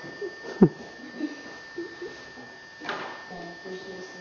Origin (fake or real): real